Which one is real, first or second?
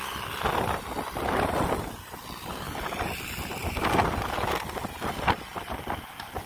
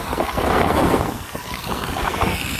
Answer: first